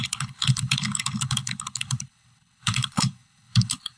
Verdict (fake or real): fake